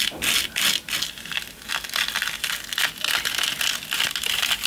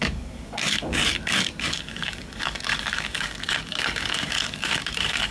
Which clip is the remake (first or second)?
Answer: second